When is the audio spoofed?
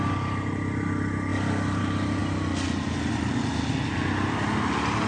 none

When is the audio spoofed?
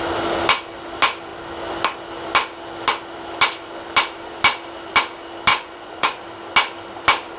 5.5-6.2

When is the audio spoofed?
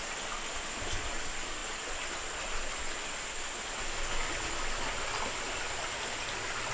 none